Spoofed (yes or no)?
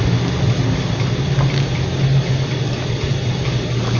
no